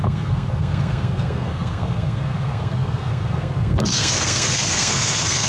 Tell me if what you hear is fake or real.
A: fake